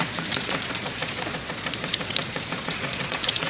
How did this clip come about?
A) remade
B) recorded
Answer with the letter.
A